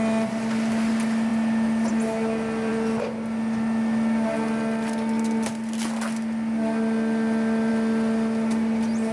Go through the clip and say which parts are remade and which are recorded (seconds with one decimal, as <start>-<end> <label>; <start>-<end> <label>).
0.0-9.1 recorded

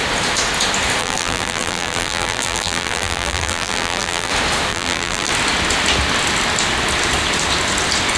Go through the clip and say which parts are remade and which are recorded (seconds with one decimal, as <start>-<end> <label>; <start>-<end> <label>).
0.0-1.0 recorded; 1.0-4.3 remade; 4.3-4.7 recorded; 4.7-5.3 remade; 5.3-8.2 recorded